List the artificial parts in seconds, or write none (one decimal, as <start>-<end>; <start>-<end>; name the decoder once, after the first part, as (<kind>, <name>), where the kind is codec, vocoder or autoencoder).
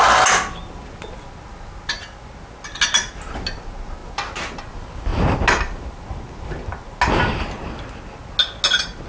none